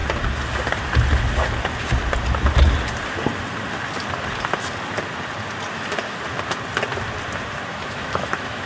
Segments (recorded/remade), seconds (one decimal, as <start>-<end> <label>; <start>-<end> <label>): 0.0-7.7 recorded; 7.7-8.7 remade